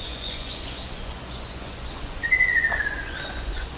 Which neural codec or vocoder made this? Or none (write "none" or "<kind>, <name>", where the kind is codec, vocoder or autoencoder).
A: vocoder, Vocos